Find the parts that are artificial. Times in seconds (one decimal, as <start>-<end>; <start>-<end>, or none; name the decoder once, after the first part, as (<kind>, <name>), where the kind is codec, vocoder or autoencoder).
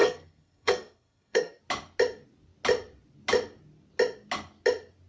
0.0-1.6 (codec, SNAC)